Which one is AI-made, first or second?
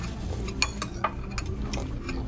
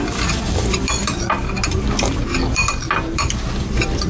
second